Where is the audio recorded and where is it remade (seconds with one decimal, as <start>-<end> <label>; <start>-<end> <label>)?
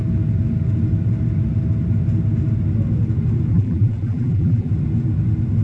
0.0-3.5 recorded; 3.5-4.7 remade; 4.7-5.6 recorded